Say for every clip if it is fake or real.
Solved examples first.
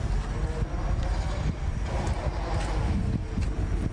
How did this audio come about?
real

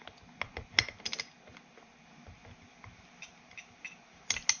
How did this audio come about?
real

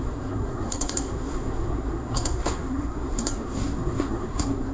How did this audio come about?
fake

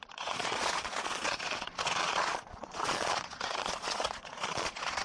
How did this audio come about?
fake